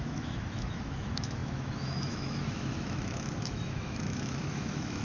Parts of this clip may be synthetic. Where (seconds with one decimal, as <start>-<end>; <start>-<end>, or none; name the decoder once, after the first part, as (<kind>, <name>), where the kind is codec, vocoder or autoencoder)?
0.0-5.0 (autoencoder, DAC-VAE)